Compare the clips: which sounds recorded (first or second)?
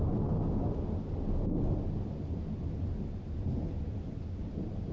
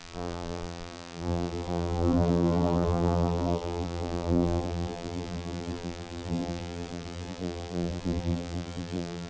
first